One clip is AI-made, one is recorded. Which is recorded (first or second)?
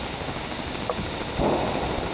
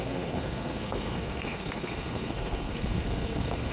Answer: first